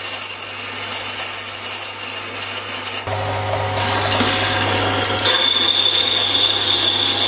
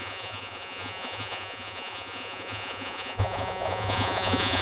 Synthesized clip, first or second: second